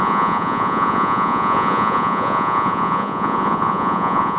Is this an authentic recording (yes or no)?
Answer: no